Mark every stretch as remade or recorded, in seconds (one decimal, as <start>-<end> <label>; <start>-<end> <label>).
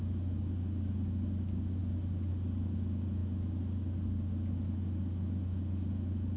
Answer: 0.0-6.4 recorded